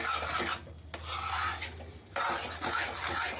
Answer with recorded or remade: recorded